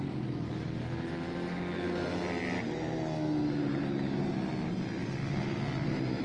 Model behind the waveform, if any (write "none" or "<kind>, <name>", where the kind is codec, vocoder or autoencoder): none